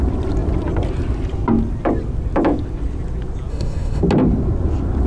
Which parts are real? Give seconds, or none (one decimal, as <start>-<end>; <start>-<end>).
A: 0.0-3.5; 4.0-5.1